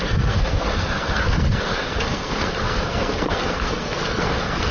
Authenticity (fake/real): fake